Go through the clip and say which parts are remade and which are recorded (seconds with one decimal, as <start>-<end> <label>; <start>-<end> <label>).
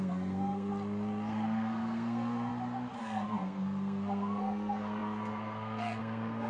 0.0-0.7 remade; 0.7-1.3 recorded; 1.3-2.5 remade; 2.5-3.0 recorded; 3.0-6.5 remade